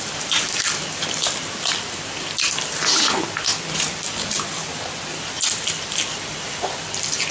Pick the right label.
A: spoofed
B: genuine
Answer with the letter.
A